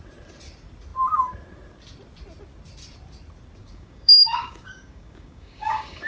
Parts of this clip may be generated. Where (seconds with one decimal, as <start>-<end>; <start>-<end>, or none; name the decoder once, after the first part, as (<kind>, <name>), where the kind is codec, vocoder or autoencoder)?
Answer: 3.6-6.1 (codec, DAC)